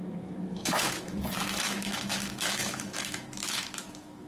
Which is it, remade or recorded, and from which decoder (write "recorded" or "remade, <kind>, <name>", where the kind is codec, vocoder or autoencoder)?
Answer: remade, autoencoder, DAC-VAE